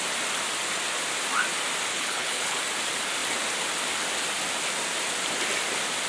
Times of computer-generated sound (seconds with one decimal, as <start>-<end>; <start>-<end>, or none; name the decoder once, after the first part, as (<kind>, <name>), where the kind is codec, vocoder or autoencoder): 1.9-2.6 (codec, HILCodec)